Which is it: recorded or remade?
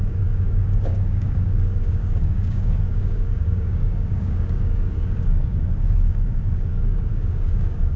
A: remade